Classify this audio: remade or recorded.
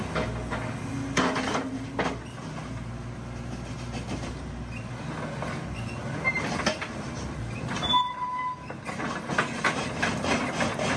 recorded